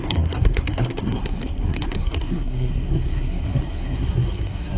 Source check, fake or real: fake